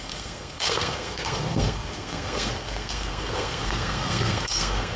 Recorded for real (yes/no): no